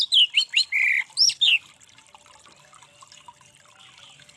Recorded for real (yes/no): yes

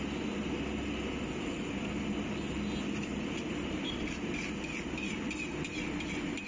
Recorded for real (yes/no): yes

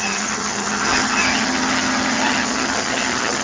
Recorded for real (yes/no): no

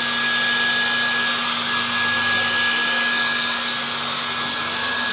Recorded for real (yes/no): yes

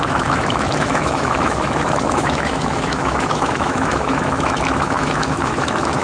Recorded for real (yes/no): no